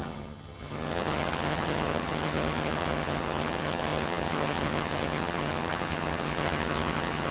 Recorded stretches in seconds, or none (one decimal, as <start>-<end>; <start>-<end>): none